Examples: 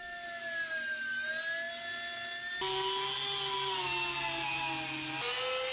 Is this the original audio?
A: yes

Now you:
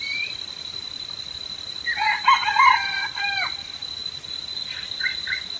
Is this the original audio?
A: no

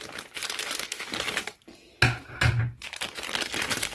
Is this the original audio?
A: yes